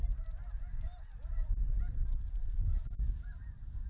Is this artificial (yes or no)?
no